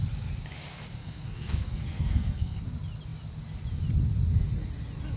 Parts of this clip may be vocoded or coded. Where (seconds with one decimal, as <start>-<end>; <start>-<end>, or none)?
1.0-2.6